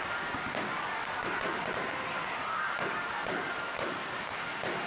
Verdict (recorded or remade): recorded